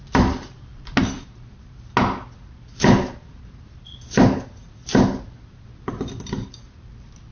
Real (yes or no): yes